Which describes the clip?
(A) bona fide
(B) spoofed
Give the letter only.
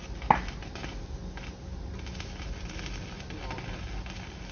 A